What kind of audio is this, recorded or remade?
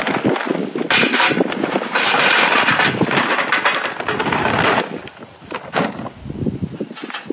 recorded